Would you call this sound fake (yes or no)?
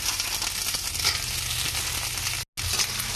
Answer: no